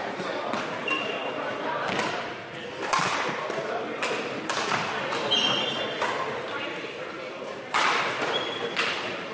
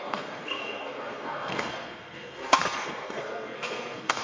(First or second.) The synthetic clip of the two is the second